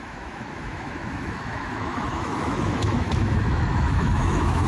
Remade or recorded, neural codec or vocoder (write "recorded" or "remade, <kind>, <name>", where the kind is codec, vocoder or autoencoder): remade, autoencoder, DAC-VAE